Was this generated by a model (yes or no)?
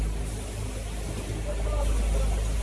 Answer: no